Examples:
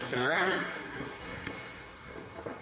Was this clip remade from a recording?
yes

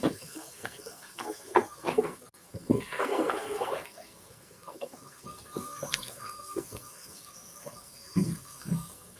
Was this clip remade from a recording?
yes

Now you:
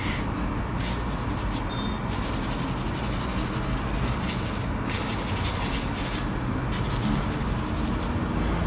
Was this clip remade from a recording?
no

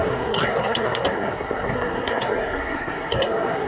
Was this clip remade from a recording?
yes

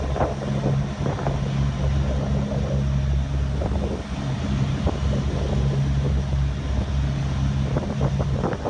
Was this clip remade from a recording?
no